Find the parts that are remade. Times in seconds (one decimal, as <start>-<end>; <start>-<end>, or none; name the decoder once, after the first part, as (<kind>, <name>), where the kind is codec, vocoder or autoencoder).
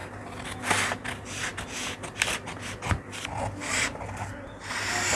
none